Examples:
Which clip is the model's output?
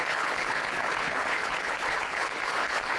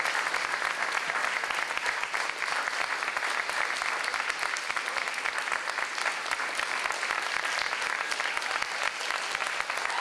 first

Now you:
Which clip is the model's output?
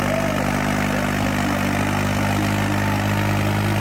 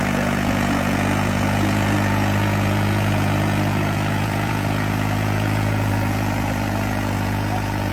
second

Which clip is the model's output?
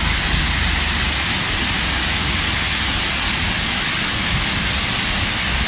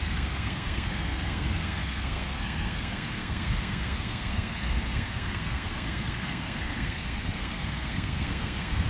second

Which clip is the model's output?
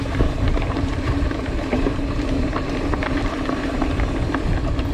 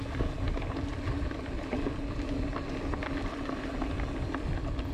first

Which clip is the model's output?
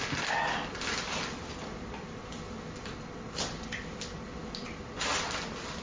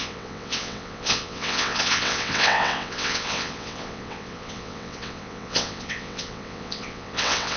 second